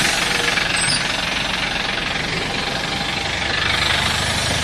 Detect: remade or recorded recorded